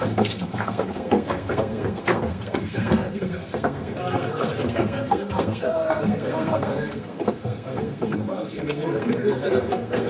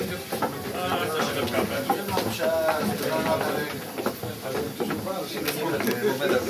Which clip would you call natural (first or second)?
second